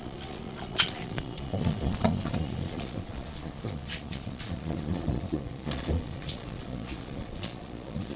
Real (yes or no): no